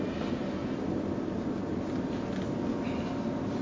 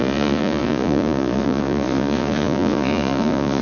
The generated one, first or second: second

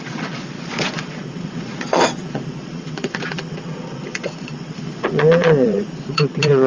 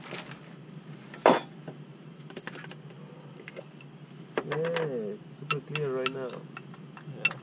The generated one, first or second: first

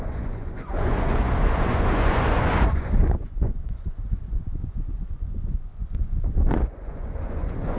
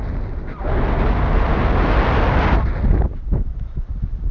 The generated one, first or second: first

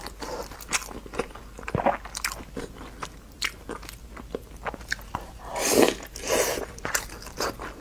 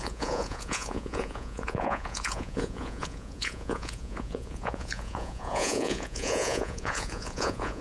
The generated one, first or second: second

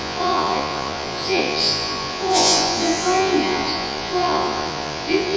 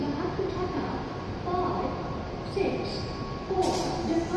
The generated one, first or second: first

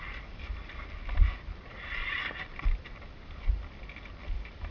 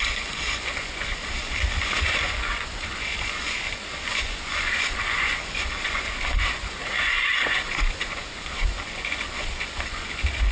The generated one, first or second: second